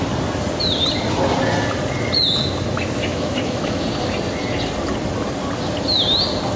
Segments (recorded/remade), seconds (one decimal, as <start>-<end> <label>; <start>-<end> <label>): 0.0-3.1 recorded; 3.1-3.8 remade; 3.8-6.6 recorded